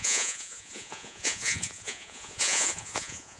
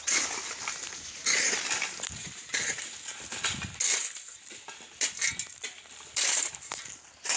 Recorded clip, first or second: second